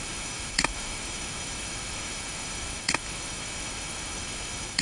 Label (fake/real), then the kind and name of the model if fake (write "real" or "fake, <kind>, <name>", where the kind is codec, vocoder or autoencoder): fake, autoencoder, DAC-VAE